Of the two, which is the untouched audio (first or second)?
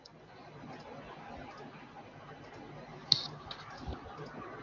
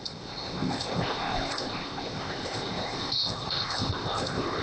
first